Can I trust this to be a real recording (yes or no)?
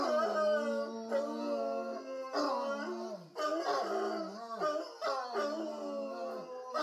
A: yes